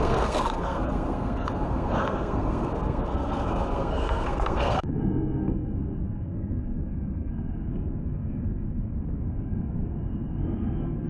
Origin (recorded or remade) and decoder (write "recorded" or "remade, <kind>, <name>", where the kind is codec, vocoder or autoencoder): remade, codec, SNAC